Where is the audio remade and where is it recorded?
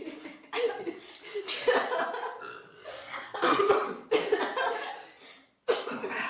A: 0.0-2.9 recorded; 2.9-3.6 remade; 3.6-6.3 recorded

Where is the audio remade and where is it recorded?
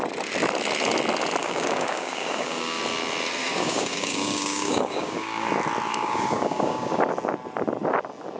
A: 0.0-1.4 recorded; 1.4-2.8 remade; 2.8-3.4 recorded; 3.4-5.5 remade; 5.5-5.9 recorded; 5.9-7.0 remade; 7.0-8.4 recorded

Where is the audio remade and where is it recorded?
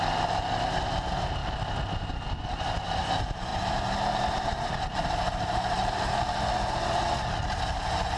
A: 0.0-3.5 recorded; 3.5-7.0 remade; 7.0-8.2 recorded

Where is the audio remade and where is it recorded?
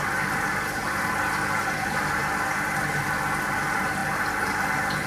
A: 0.0-5.1 recorded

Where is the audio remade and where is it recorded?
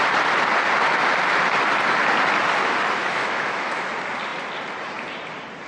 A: 0.0-3.0 recorded; 3.0-3.9 remade; 3.9-5.7 recorded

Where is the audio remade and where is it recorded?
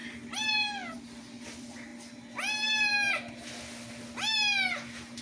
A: 0.0-5.2 recorded